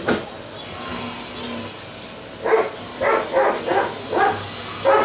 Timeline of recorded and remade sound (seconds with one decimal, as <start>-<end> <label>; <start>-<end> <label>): 0.0-5.0 recorded